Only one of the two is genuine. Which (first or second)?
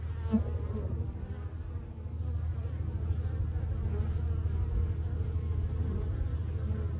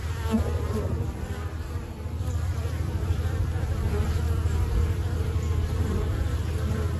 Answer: first